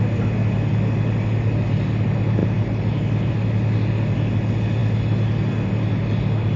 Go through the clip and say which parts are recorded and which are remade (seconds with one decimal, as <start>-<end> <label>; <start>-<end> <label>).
0.0-2.4 recorded; 2.4-3.3 remade; 3.3-6.6 recorded